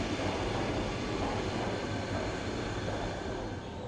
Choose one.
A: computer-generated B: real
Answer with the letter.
B